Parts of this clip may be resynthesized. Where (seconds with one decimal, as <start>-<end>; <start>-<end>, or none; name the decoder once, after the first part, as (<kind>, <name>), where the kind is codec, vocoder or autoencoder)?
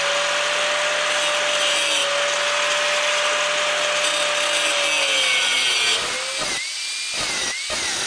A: none